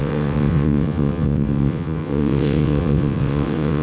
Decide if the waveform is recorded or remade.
remade